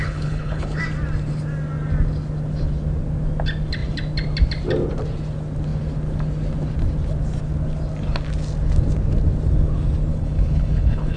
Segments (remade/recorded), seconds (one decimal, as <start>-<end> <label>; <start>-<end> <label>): 0.0-0.8 remade; 0.8-10.1 recorded; 10.1-11.2 remade